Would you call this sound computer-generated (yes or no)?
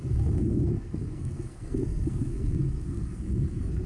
yes